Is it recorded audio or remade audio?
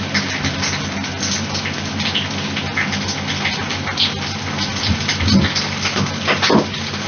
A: recorded